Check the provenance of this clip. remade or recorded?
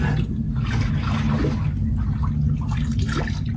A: recorded